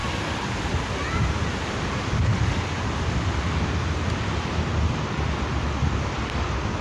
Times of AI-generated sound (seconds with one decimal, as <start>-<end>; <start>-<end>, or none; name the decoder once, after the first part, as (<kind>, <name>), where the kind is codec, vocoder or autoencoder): none